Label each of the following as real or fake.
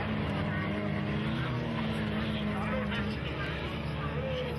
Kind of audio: real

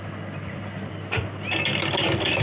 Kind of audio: real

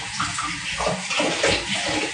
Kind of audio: real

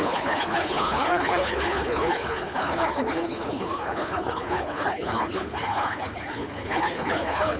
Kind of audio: fake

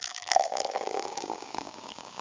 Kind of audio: fake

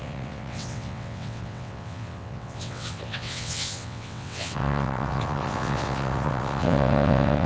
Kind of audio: fake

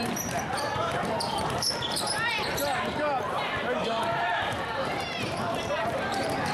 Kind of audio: fake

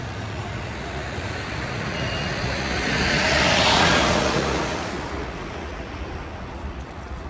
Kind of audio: fake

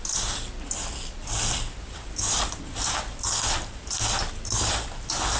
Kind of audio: real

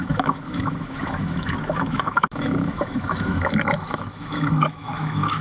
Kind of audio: fake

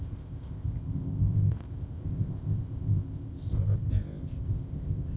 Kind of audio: fake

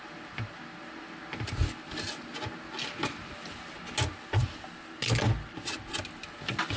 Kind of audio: real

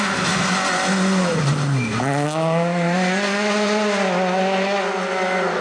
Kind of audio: real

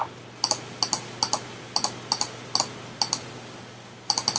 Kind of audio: real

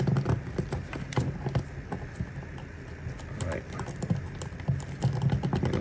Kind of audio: real